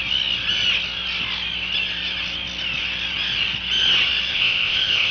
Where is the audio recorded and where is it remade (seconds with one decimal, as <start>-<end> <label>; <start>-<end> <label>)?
0.0-4.3 recorded; 4.3-5.1 remade